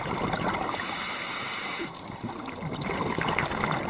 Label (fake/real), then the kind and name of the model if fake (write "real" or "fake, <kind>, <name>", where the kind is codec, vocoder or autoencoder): real